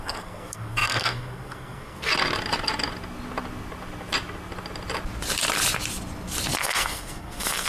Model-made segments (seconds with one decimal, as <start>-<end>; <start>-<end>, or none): 0.0-2.1; 6.6-7.7